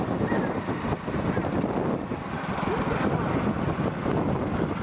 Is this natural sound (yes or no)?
yes